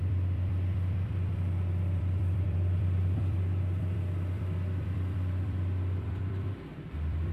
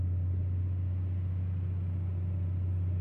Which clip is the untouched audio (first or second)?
second